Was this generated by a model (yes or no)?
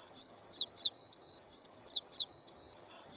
yes